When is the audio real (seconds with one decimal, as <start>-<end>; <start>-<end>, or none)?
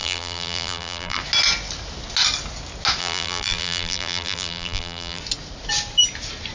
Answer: 1.2-3.0; 5.2-6.5